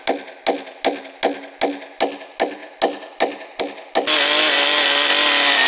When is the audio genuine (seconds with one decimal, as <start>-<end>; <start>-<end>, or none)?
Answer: 0.0-5.7